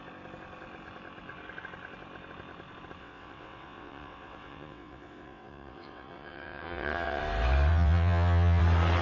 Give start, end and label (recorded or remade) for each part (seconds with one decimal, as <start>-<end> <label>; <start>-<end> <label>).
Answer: 0.0-3.0 recorded; 3.0-7.2 remade; 7.2-7.7 recorded; 7.7-8.6 remade; 8.6-9.0 recorded